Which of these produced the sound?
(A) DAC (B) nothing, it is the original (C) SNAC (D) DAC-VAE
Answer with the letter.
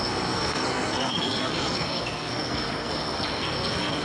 C